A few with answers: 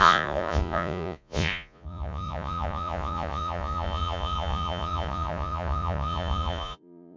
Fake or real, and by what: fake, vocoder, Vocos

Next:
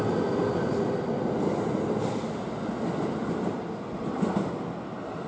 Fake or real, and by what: real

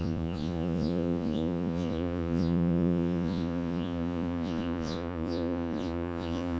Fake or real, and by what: fake, vocoder, Vocos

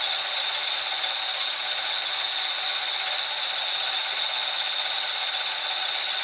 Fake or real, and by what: real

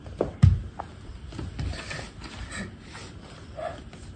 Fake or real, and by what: real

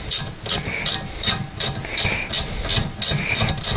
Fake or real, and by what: real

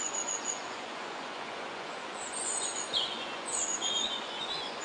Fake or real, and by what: fake, vocoder, Vocos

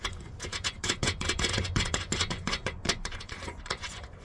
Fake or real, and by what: fake, vocoder, Vocos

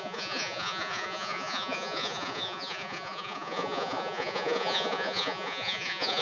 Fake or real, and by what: fake, vocoder, Vocos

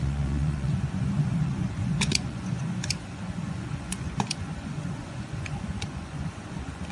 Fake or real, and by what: fake, vocoder, Vocos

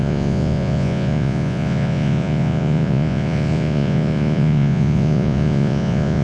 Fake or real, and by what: fake, vocoder, Vocos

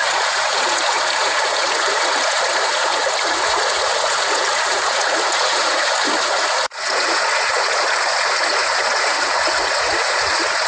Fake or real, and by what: fake, vocoder, Vocos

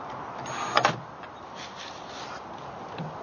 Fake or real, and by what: real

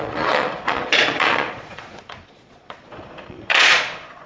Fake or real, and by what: fake, vocoder, Vocos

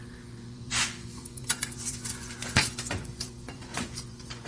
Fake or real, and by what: fake, vocoder, Vocos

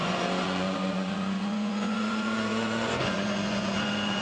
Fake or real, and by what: fake, vocoder, Vocos